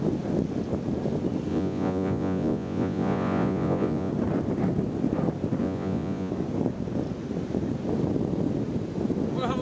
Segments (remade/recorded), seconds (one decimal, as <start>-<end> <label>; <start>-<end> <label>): 0.0-1.5 recorded; 1.5-4.1 remade; 4.1-5.6 recorded; 5.6-6.3 remade; 6.3-9.6 recorded